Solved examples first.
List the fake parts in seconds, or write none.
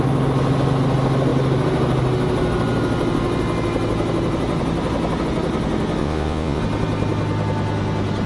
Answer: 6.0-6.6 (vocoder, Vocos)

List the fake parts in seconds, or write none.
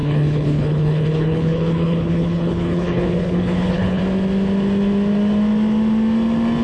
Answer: 0.0-4.0 (codec, HILCodec)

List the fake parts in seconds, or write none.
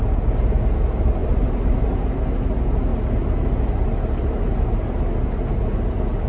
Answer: 1.2-2.2 (vocoder, BigVGAN v2)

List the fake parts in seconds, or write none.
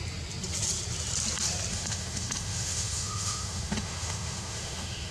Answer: 1.7-5.1 (autoencoder, DAC-VAE)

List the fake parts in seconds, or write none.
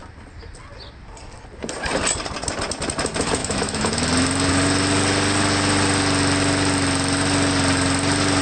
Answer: 3.4-3.9 (autoencoder, DAC-VAE)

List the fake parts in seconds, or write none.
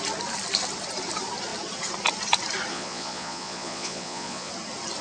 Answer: 2.7-4.5 (vocoder, Vocos)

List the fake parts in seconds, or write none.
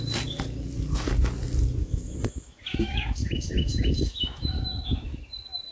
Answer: 1.8-5.2 (autoencoder, DAC-VAE)